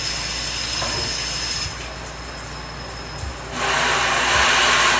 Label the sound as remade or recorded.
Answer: recorded